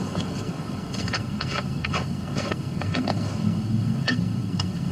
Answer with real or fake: fake